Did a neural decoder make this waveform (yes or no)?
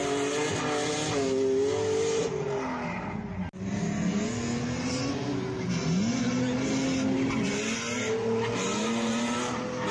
no